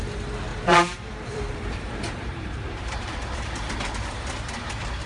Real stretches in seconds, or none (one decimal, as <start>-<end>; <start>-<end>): 0.0-0.5; 3.6-5.1